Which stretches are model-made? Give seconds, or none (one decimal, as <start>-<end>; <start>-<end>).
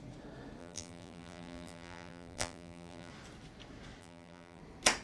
0.6-3.1; 4.0-4.6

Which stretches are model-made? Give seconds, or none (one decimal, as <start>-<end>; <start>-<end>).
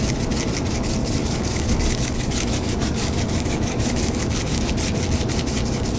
1.0-4.6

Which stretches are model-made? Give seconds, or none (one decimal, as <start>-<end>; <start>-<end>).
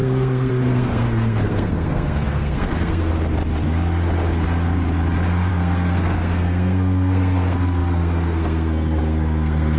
0.0-3.1; 5.5-9.8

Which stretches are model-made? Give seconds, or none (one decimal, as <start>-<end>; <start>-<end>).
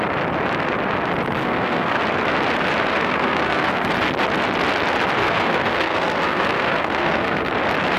1.4-2.0; 2.9-3.9; 5.2-7.5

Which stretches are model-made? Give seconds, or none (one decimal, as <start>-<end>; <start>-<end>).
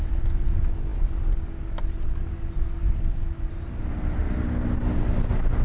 none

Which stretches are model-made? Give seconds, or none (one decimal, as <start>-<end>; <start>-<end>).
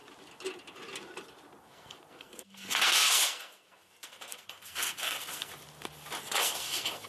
1.6-5.5; 6.2-7.1